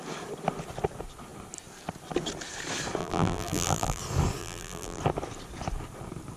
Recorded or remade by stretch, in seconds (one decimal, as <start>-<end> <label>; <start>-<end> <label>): 0.0-3.0 recorded; 3.0-4.0 remade; 4.0-4.4 recorded; 4.4-5.0 remade; 5.0-6.4 recorded